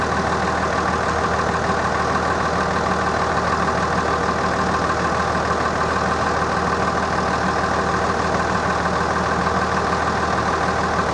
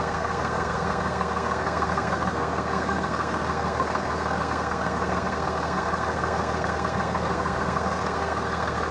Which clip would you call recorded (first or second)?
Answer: first